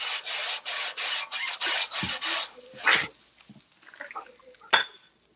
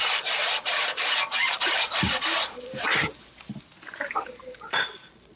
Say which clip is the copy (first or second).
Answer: second